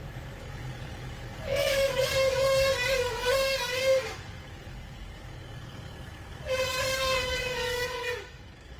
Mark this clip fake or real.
fake